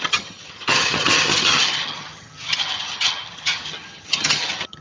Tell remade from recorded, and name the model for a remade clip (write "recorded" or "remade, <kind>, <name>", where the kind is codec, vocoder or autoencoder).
remade, vocoder, HiFi-GAN